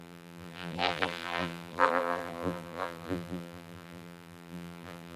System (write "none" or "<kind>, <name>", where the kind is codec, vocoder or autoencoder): vocoder, BigVGAN v2